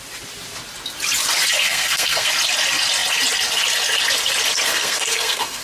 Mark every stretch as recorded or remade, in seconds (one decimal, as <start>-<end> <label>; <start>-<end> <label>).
0.0-1.6 recorded; 1.6-2.3 remade; 2.3-4.7 recorded; 4.7-5.6 remade